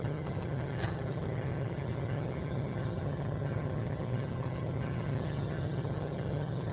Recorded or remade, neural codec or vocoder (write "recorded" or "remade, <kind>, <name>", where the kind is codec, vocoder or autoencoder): remade, vocoder, HiFi-GAN